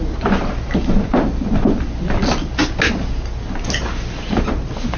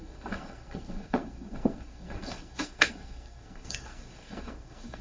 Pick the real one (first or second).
first